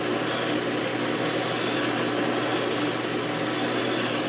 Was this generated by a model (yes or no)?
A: no